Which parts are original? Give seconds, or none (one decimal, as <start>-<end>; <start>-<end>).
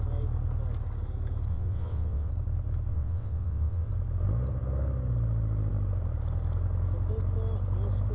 0.0-1.5; 2.3-2.9; 3.9-8.1